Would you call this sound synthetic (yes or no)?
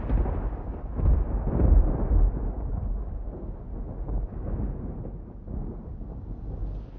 no